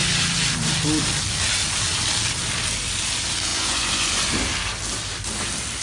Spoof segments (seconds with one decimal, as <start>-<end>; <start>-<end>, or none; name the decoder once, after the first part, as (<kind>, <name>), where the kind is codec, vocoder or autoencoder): 3.5-4.3 (vocoder, Vocos)